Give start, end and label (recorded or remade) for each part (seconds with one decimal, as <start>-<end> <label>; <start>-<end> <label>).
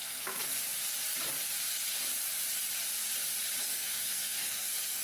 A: 0.0-0.6 remade; 0.6-3.6 recorded; 3.6-5.0 remade